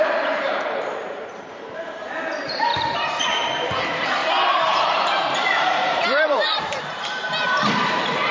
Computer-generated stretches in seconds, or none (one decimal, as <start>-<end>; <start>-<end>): 0.0-8.3